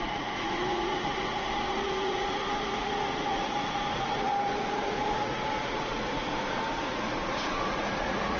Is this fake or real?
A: fake